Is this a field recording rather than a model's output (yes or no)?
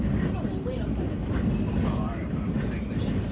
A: yes